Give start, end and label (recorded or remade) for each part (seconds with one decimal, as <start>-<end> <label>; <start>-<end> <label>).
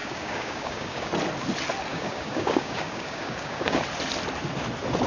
0.0-1.1 remade; 1.1-1.9 recorded; 1.9-3.8 remade; 3.8-5.1 recorded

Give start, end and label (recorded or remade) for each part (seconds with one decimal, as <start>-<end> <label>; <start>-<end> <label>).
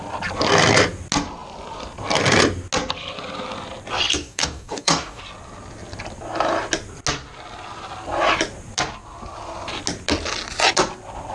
0.0-4.1 recorded; 4.1-5.2 remade; 5.2-11.3 recorded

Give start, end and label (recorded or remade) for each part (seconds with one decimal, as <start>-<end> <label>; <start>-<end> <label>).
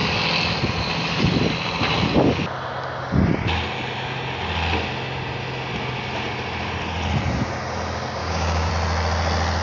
0.0-8.2 recorded; 8.2-8.7 remade; 8.7-9.6 recorded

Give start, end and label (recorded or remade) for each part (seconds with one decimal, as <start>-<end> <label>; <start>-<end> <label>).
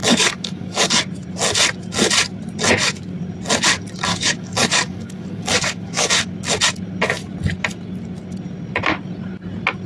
0.0-1.0 remade; 1.0-4.1 recorded; 4.1-6.1 remade; 6.1-9.9 recorded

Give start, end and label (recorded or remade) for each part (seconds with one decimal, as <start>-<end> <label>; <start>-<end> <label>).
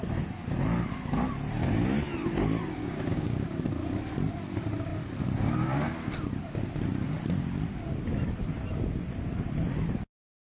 0.0-2.8 recorded; 2.8-3.6 remade; 3.6-10.5 recorded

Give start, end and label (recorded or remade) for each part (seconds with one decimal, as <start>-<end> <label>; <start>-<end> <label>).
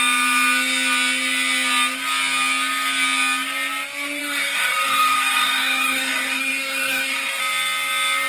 0.0-4.2 recorded; 4.2-7.4 remade; 7.4-8.3 recorded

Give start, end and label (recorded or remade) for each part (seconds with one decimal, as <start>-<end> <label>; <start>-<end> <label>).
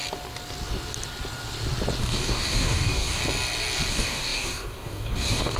0.0-2.0 recorded; 2.0-3.2 remade; 3.2-3.9 recorded; 3.9-5.6 remade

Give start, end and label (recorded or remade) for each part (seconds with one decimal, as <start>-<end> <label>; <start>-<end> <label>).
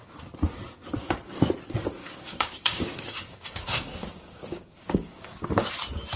0.0-2.0 recorded; 2.0-5.7 remade; 5.7-6.2 recorded